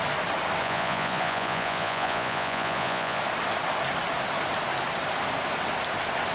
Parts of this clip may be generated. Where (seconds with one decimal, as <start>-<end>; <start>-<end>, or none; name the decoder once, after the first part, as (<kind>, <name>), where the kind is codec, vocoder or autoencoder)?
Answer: 0.6-3.2 (vocoder, Vocos)